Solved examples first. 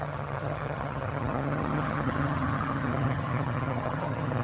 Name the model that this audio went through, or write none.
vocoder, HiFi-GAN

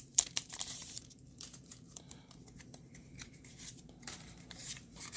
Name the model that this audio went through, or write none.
vocoder, BigVGAN v2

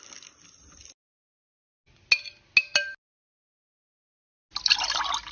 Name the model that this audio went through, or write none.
none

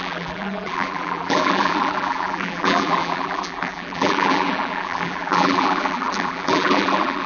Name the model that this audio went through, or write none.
vocoder, BigVGAN v2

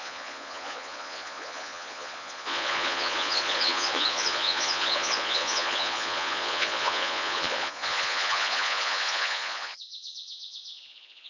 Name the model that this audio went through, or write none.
vocoder, Vocos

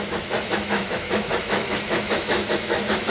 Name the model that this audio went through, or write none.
autoencoder, DAC-VAE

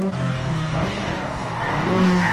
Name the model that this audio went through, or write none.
codec, DAC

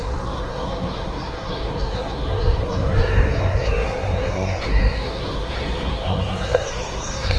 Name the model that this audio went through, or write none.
codec, SNAC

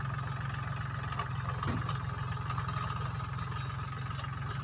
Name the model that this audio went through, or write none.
none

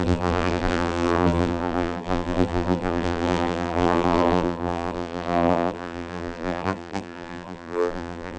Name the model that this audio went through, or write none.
vocoder, BigVGAN v2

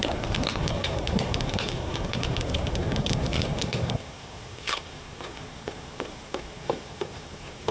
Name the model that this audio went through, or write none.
codec, SNAC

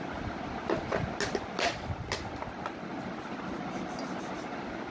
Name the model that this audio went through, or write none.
none